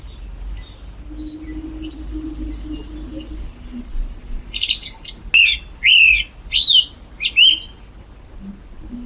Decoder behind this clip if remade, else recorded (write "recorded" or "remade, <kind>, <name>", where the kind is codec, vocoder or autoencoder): recorded